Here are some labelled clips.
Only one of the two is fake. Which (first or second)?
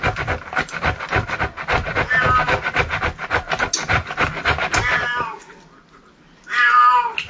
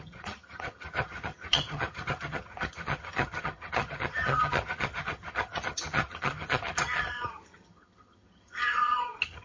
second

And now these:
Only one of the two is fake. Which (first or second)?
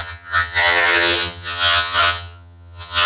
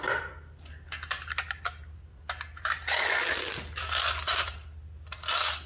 first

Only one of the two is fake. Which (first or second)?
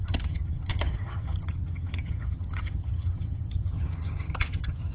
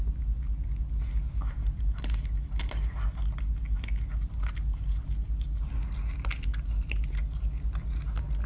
first